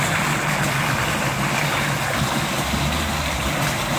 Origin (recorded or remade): recorded